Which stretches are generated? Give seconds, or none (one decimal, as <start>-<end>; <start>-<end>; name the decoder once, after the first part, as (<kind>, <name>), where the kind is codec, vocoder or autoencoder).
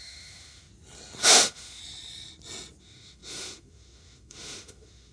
0.0-0.7 (autoencoder, DAC-VAE); 1.2-1.8; 2.8-5.1